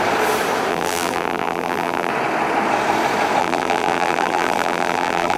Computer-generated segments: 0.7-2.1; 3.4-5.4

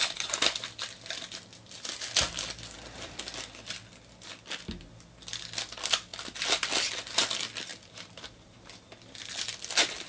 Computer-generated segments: none

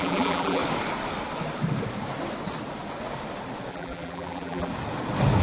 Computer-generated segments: 0.0-0.6; 3.7-4.7